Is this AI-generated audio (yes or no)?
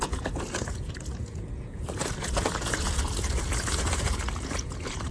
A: yes